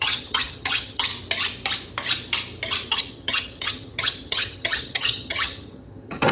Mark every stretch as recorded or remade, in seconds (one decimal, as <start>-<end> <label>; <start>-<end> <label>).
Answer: 0.0-1.1 remade; 1.1-2.9 recorded; 2.9-6.3 remade